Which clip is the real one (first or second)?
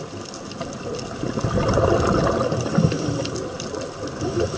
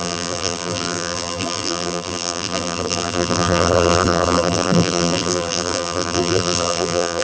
first